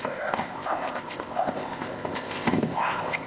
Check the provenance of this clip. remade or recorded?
remade